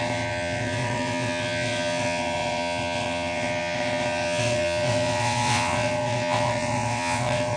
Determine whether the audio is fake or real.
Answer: fake